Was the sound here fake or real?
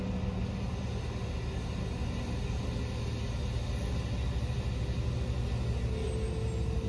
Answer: real